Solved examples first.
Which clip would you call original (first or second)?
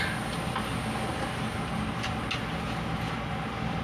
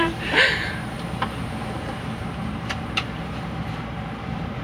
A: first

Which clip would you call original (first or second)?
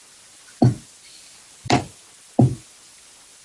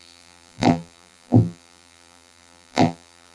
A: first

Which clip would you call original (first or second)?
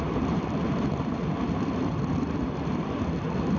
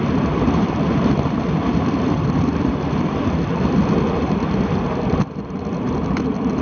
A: first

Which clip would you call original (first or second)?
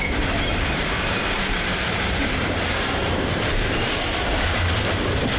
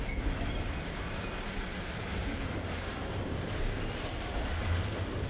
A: second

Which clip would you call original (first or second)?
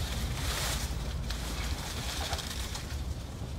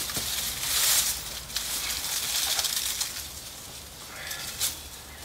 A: second